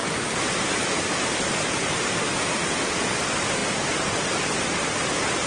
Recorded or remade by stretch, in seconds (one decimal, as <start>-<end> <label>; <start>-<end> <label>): 0.0-5.5 recorded